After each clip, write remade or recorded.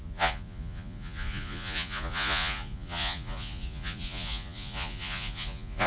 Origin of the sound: remade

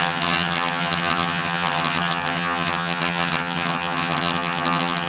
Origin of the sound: remade